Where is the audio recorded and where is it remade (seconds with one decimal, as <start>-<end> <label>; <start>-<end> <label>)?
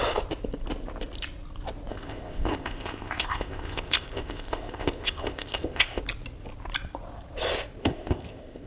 0.0-1.9 recorded; 1.9-6.0 remade; 6.0-7.8 recorded; 7.8-8.7 remade